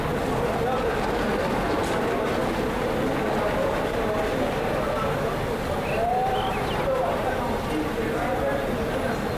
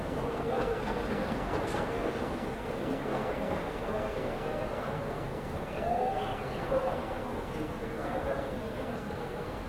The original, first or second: first